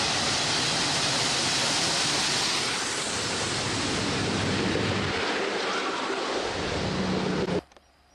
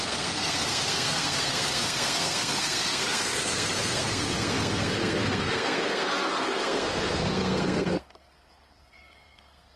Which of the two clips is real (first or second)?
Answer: first